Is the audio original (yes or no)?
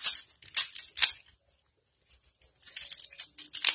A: yes